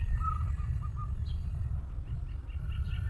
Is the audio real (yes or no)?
yes